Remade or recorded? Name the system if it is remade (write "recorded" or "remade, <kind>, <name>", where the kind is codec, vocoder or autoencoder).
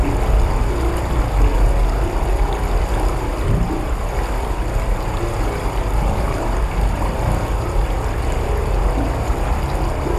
recorded